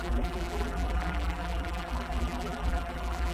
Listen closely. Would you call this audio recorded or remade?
remade